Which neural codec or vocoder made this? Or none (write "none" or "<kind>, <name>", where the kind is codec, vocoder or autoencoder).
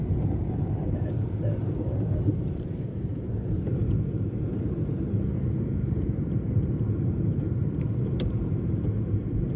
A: vocoder, BigVGAN v2